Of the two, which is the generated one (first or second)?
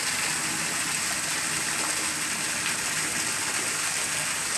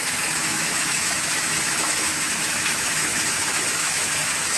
second